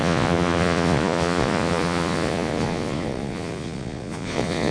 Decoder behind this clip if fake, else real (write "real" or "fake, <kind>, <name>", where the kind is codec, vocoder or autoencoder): fake, vocoder, Vocos